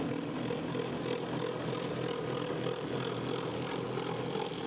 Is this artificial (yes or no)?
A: no